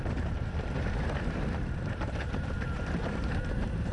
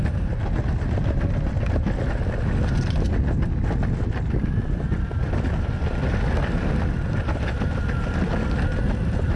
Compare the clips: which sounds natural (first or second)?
second